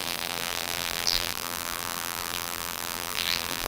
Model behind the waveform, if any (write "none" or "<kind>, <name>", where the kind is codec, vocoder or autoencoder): vocoder, BigVGAN v2